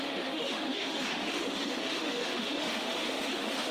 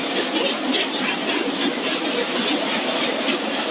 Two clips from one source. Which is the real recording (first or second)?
second